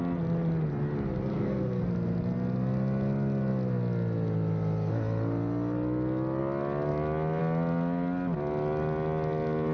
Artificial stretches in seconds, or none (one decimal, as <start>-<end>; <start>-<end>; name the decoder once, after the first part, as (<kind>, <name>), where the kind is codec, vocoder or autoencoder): 1.3-1.9 (codec, SNAC)